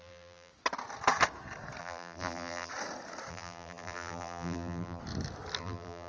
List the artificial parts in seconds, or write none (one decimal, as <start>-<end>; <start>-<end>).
0.0-0.5; 1.8-2.7; 3.3-5.0; 5.6-6.1